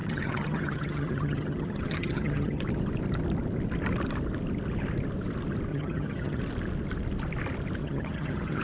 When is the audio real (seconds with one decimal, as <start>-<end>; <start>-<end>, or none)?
2.6-5.7; 6.4-7.8